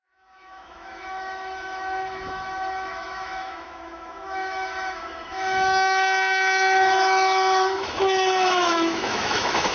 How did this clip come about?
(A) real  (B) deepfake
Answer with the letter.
B